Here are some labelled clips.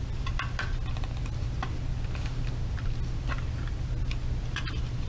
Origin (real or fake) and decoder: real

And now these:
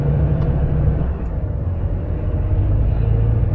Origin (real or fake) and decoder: real